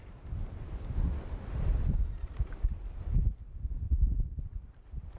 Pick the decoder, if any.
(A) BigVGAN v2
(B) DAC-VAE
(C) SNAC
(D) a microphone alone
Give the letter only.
A